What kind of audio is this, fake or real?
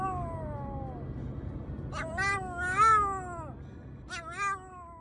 real